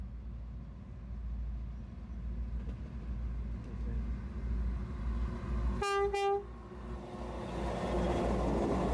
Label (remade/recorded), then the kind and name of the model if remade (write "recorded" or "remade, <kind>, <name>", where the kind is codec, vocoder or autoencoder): recorded